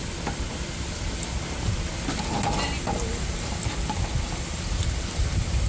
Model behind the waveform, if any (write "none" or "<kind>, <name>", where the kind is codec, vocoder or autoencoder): none